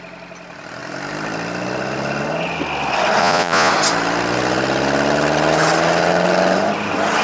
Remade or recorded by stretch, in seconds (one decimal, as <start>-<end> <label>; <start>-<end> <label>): 0.0-3.2 recorded; 3.2-3.7 remade; 3.7-7.2 recorded